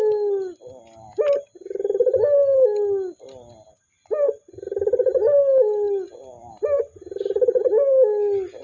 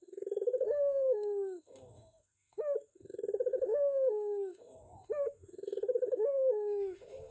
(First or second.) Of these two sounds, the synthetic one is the second